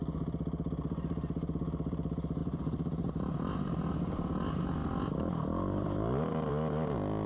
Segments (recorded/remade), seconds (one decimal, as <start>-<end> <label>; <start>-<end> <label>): 0.0-2.4 recorded; 2.4-3.1 remade; 3.1-7.3 recorded